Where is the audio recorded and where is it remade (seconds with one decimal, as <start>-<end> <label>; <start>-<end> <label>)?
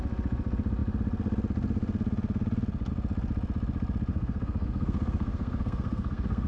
0.0-4.1 recorded; 4.1-6.5 remade